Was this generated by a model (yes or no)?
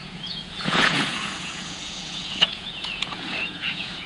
yes